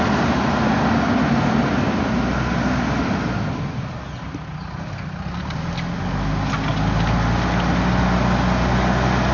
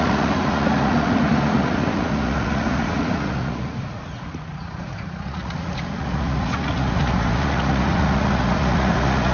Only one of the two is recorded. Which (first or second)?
first